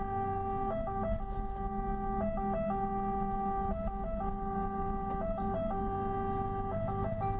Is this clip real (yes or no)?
yes